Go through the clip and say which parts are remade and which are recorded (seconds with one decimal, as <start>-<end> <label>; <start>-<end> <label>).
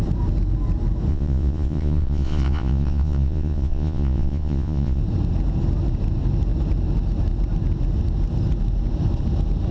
0.0-1.1 recorded; 1.1-5.0 remade; 5.0-9.7 recorded